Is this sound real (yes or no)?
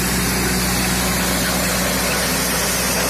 yes